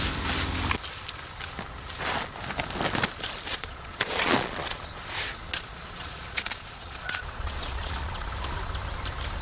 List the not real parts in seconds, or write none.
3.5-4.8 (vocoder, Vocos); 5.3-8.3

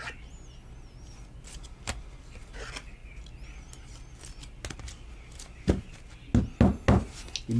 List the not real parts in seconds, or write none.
none

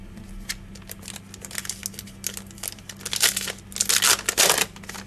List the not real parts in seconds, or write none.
none

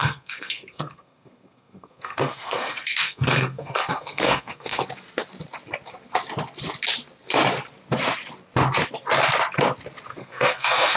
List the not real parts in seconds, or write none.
0.0-4.8 (codec, SNAC); 10.1-11.0

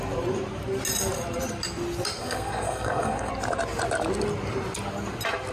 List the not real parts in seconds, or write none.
2.2-3.3 (codec, SNAC)

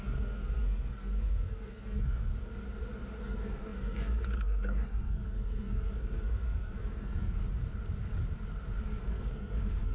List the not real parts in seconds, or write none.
0.0-2.3 (codec, SNAC); 3.2-7.4; 8.8-9.9